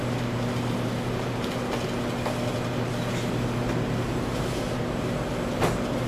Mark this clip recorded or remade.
recorded